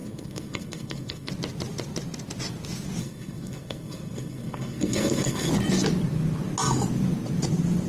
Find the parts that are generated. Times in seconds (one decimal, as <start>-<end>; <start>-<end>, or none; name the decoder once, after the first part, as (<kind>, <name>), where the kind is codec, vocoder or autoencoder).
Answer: 0.0-1.3 (codec, SNAC); 3.0-5.5